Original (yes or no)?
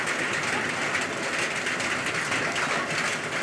yes